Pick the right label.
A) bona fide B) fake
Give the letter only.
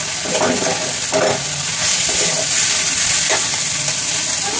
A